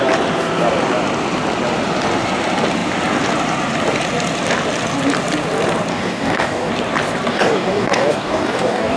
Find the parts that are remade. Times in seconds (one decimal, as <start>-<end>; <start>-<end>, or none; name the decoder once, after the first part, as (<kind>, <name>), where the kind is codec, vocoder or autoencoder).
5.9-6.7 (codec, DAC); 7.3-9.0